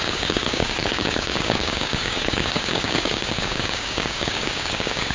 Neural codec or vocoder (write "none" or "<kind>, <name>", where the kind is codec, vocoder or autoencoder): codec, DAC